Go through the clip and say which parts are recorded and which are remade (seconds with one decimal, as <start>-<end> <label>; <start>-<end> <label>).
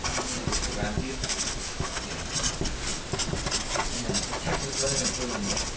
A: 0.0-1.0 recorded; 1.0-2.0 remade; 2.0-5.8 recorded